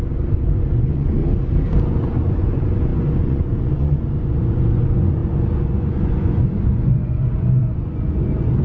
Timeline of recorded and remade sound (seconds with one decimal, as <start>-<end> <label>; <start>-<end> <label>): 0.0-1.2 remade; 1.2-1.9 recorded; 1.9-8.6 remade